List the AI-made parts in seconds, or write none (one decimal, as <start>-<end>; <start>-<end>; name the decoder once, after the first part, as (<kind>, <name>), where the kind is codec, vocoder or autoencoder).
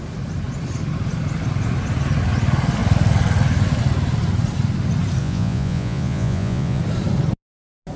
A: 5.2-6.8 (vocoder, Vocos)